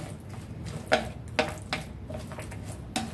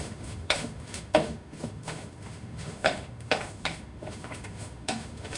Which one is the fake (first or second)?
second